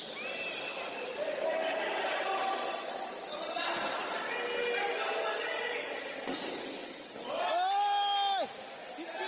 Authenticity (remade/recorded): recorded